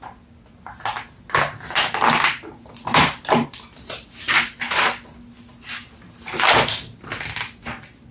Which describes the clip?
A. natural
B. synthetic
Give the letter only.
B